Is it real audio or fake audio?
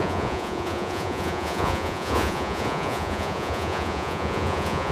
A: fake